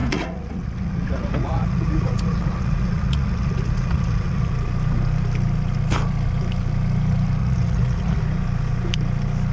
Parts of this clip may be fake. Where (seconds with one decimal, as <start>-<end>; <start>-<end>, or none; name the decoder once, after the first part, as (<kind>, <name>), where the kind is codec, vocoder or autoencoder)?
0.0-4.5 (vocoder, Vocos); 7.4-8.2